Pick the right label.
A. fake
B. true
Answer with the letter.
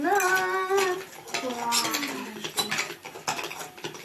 B